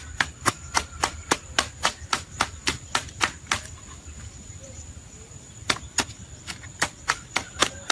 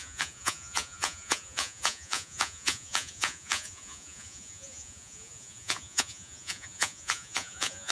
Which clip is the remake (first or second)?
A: second